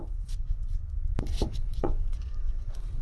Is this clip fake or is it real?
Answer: fake